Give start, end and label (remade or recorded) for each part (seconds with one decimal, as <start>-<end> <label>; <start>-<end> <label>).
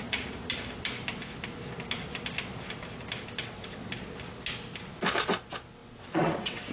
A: 0.0-3.4 recorded; 3.4-3.9 remade; 3.9-5.8 recorded; 5.8-6.7 remade